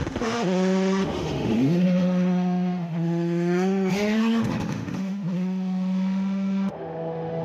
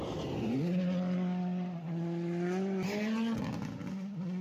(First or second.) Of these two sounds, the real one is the second